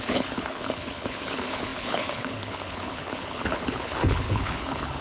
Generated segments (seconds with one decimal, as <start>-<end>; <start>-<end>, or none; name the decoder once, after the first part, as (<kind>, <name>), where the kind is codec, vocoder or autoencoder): 0.0-5.0 (codec, HILCodec)